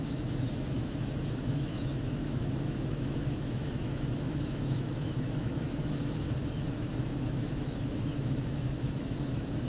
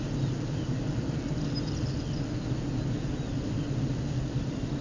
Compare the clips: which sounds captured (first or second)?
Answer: second